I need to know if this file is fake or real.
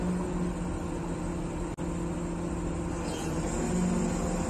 real